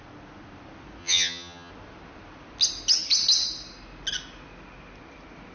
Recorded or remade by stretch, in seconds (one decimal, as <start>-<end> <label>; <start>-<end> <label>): 0.0-1.0 recorded; 1.0-1.7 remade; 1.7-5.5 recorded